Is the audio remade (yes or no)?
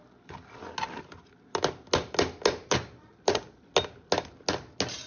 no